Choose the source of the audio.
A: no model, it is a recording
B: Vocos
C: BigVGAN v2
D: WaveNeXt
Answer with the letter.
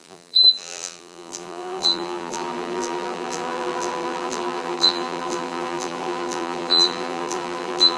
C